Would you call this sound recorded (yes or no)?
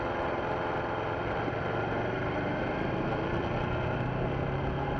yes